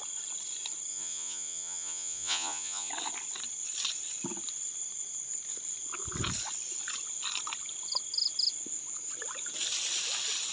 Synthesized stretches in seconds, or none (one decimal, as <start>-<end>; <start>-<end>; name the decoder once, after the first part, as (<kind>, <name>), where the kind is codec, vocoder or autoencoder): 0.9-2.9 (vocoder, Vocos)